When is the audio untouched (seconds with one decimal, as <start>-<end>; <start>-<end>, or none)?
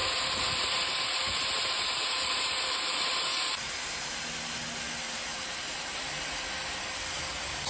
4.2-5.3; 5.9-7.7